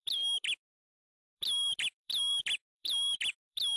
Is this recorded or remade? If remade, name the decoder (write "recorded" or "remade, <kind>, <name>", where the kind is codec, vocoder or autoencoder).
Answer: remade, vocoder, BigVGAN v2